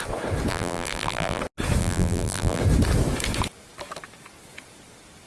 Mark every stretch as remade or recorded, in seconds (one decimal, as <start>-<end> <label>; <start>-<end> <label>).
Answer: 0.0-0.5 recorded; 0.5-1.4 remade; 1.4-1.8 recorded; 1.8-2.6 remade; 2.6-5.3 recorded